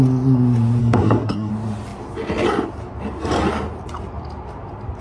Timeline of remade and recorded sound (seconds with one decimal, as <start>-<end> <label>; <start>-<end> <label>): 0.0-0.8 recorded; 0.8-1.5 remade; 1.5-5.0 recorded